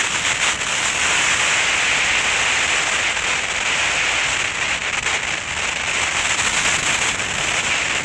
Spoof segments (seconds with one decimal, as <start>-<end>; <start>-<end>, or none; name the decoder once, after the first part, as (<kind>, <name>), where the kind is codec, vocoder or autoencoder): none